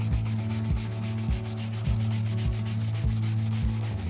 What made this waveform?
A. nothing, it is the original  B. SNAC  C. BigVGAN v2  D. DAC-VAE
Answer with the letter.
A